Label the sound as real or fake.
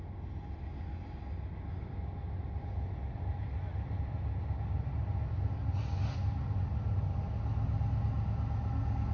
real